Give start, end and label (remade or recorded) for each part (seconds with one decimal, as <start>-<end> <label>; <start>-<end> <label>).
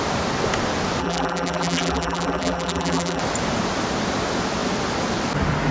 0.0-1.0 recorded; 1.0-3.2 remade; 3.2-5.7 recorded